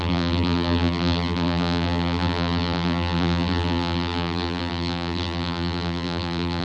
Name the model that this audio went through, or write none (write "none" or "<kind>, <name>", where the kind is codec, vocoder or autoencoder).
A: vocoder, BigVGAN v2